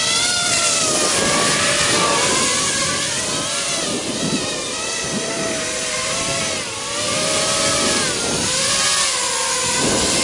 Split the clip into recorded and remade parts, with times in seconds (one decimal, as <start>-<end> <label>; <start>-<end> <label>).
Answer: 0.0-10.2 recorded